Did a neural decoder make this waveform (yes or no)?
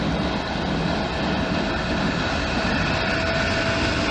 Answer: no